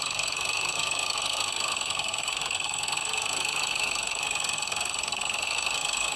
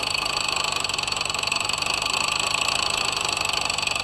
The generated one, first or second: first